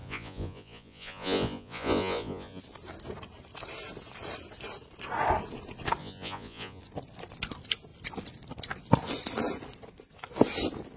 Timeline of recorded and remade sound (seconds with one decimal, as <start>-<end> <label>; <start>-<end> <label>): 0.0-2.6 remade; 2.6-6.0 recorded; 6.0-6.8 remade; 6.8-11.0 recorded